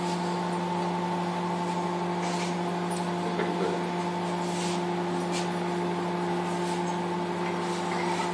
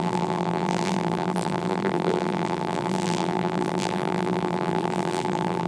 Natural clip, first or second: first